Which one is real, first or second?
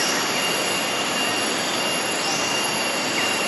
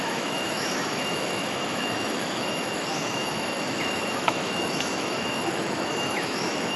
first